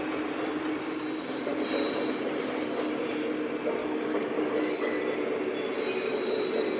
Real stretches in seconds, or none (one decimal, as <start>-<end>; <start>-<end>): 0.0-3.8; 5.0-6.8